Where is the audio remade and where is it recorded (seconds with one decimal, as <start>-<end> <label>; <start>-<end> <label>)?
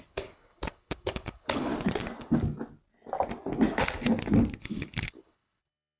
0.0-1.7 remade; 1.7-4.6 recorded; 4.6-6.0 remade